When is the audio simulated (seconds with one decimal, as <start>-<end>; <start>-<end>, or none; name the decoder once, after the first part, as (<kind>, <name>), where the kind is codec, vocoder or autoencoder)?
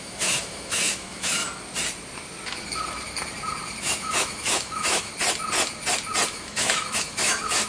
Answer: 0.0-1.4 (autoencoder, DAC-VAE); 3.8-5.1; 6.3-7.7